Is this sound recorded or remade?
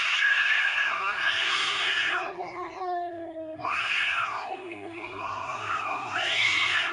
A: remade